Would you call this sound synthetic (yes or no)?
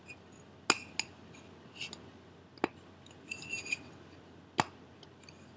no